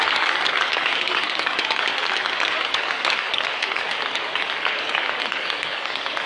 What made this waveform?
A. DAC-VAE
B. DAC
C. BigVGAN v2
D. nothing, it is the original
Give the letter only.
B